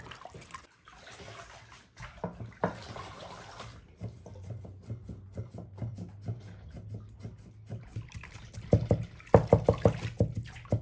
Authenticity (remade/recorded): recorded